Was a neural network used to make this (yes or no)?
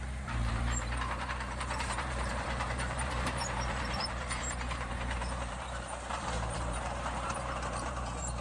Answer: yes